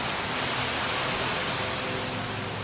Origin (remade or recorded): recorded